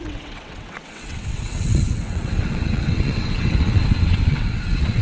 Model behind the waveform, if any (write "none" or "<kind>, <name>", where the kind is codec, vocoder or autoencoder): vocoder, WaveNeXt